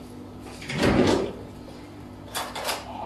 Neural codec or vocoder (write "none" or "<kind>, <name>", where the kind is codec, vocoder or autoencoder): none